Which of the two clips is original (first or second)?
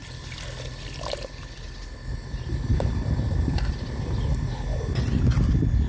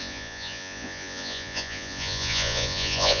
first